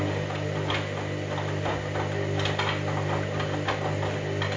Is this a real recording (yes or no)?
yes